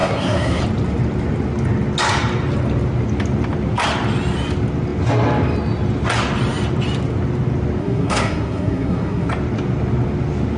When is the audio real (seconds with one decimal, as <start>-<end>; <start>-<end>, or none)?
0.6-7.8; 9.3-10.6